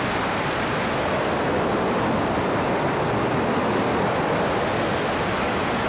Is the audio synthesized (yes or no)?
no